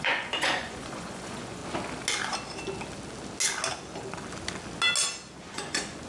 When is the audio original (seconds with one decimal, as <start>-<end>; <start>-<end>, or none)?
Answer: 1.6-5.3